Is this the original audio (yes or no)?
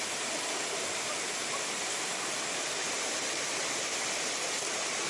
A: yes